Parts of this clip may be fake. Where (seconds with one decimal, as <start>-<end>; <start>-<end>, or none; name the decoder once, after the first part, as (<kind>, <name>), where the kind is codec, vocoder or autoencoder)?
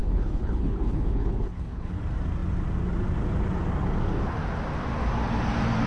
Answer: 0.0-2.0 (codec, HILCodec)